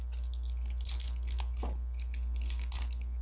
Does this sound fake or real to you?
real